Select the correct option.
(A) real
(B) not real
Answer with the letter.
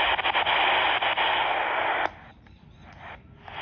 A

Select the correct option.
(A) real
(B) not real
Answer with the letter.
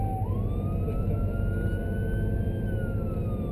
A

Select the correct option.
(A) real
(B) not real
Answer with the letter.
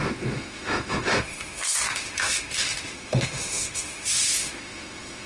B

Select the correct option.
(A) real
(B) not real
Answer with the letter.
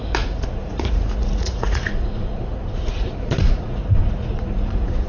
B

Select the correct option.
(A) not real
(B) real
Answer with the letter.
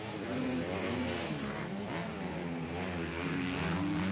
B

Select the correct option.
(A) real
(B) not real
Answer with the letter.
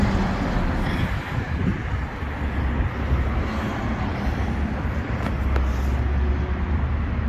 A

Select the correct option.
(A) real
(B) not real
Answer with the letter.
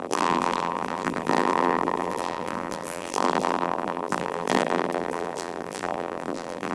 B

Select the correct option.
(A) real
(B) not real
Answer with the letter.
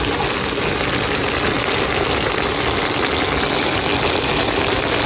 A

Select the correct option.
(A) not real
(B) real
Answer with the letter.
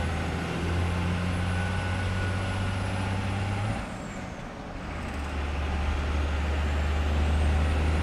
B